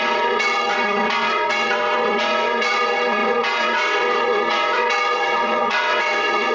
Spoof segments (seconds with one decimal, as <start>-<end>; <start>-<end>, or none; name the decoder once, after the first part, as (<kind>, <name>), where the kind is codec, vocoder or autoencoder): 0.0-6.5 (vocoder, WaveNeXt)